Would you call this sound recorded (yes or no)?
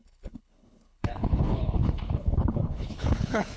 no